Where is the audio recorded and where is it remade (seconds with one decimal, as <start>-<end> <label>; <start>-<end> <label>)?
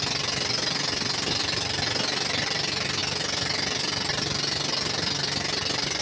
0.0-6.0 recorded